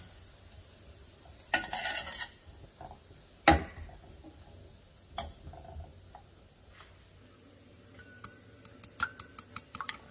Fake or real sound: real